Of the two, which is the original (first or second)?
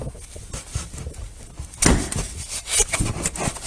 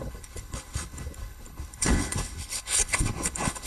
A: first